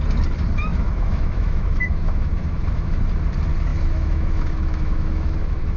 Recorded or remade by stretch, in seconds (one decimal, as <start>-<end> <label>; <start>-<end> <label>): 0.0-0.7 recorded; 0.7-3.0 remade; 3.0-3.7 recorded; 3.7-5.8 remade